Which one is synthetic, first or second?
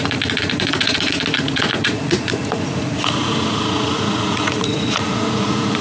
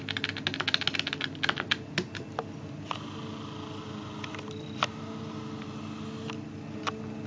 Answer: first